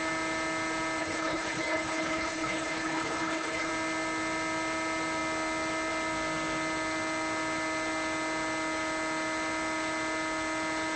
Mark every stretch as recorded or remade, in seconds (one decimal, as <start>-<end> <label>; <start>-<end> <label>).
0.0-1.0 recorded; 1.0-3.7 remade; 3.7-11.0 recorded